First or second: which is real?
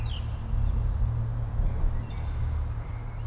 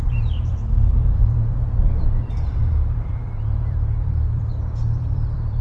first